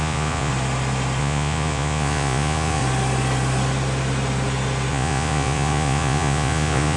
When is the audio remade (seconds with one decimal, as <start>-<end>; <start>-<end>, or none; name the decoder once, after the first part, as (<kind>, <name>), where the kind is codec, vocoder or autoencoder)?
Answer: 0.0-0.5 (vocoder, Vocos); 1.2-2.8; 4.9-7.0